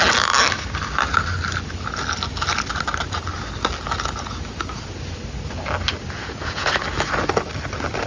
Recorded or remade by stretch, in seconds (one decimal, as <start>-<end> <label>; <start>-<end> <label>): 0.0-6.2 recorded; 6.2-6.8 remade; 6.8-8.1 recorded